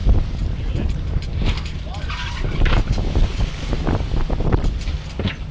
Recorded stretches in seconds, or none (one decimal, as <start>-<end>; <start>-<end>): 3.3-5.5